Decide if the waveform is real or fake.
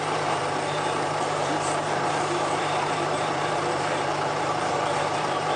fake